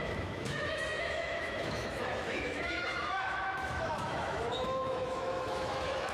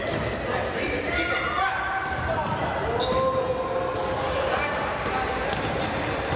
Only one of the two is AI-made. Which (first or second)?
first